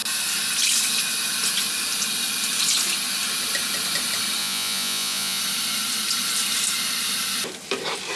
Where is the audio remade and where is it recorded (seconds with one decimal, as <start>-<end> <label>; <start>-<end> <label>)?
0.0-4.4 recorded; 4.4-5.4 remade; 5.4-8.2 recorded